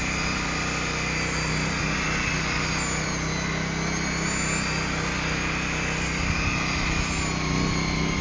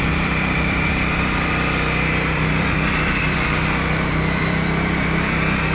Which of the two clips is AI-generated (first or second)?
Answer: second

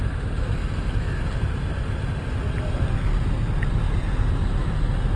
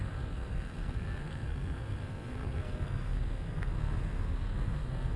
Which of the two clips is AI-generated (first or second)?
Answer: second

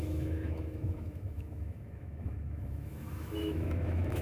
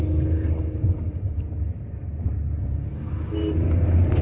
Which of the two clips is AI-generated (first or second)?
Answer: first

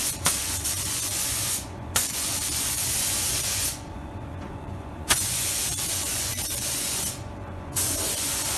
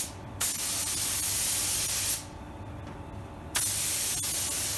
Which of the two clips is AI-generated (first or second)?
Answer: first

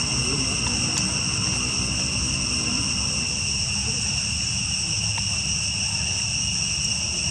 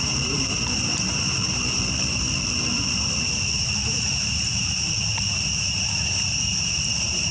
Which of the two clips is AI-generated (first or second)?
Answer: second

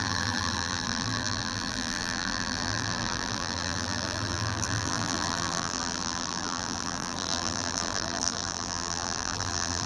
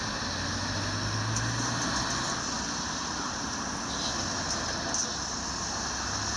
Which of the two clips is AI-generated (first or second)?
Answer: first